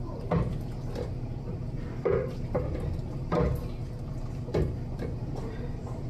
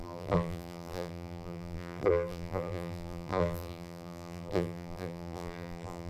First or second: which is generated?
second